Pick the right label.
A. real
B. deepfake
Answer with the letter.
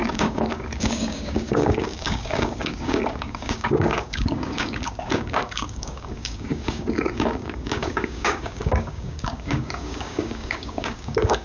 B